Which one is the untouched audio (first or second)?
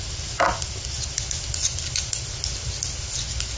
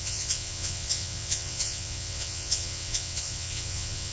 first